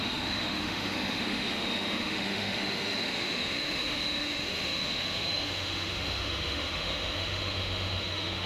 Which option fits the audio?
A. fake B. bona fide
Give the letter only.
A